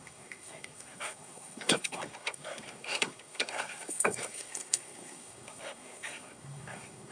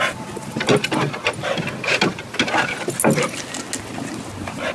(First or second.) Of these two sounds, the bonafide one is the second